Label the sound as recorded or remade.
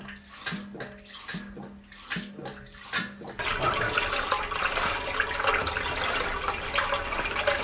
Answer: recorded